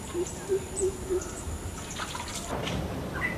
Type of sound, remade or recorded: remade